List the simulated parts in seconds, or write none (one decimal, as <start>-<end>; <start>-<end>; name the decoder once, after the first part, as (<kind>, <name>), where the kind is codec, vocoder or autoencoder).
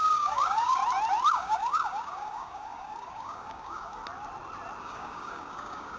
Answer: 0.0-0.8 (codec, DAC); 1.3-4.0; 4.8-6.0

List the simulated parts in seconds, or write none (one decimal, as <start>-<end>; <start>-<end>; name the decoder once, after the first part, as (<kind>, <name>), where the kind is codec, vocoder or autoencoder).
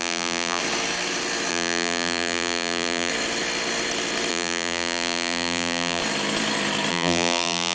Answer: 0.0-0.6 (vocoder, BigVGAN v2); 1.5-3.1; 4.3-6.0; 6.9-7.7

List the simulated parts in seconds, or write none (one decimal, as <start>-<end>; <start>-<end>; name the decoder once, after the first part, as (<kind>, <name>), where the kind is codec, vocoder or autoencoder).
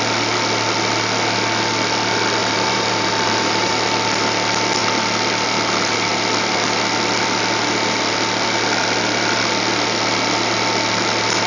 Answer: 2.4-3.7 (vocoder, BigVGAN v2)